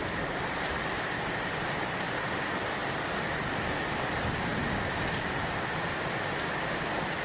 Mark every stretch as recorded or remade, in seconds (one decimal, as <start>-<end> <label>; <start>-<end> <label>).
0.0-2.2 remade; 2.2-7.2 recorded